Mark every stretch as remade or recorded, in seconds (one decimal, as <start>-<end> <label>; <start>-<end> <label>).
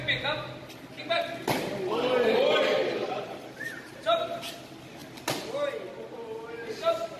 0.0-3.0 recorded; 3.0-4.6 remade; 4.6-7.2 recorded